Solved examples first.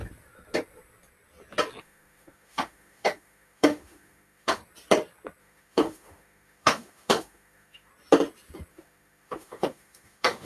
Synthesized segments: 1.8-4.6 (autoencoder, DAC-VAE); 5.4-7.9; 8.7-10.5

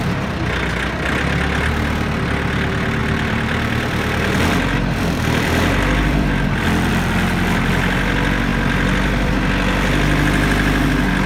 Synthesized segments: 3.0-6.9 (vocoder, BigVGAN v2); 8.5-9.3

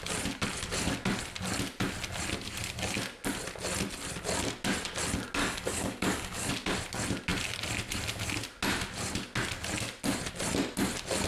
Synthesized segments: 5.4-6.5 (codec, DAC)

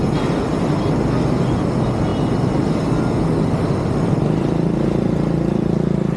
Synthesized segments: none

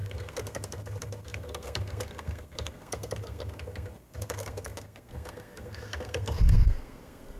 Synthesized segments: 0.0-7.4 (codec, SNAC)